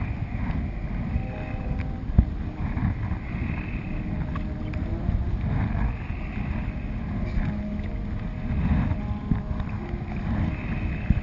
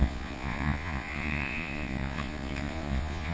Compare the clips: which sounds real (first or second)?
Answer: first